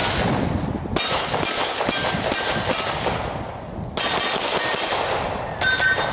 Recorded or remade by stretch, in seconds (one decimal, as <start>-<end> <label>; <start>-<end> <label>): 0.0-6.1 recorded